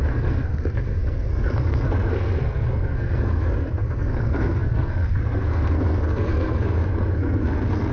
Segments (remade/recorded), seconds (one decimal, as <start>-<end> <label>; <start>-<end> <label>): 0.0-7.9 remade